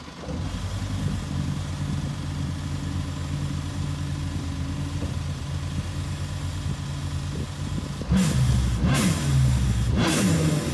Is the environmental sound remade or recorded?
recorded